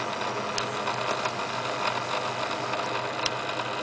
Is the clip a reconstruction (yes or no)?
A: no